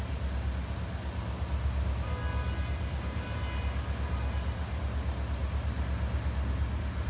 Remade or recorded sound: recorded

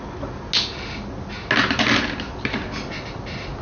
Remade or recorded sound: recorded